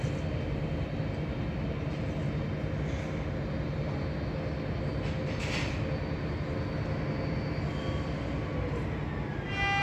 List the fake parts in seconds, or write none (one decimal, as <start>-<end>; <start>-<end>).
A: none